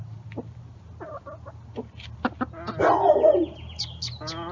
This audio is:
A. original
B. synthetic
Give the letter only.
A